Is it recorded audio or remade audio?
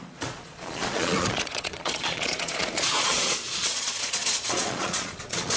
remade